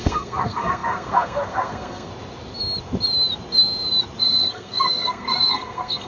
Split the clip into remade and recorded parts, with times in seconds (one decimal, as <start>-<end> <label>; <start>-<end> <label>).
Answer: 0.0-2.1 remade; 2.1-4.2 recorded; 4.2-6.1 remade